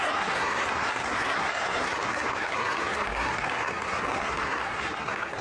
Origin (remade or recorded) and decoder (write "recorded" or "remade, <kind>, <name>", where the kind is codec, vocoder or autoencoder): remade, codec, SNAC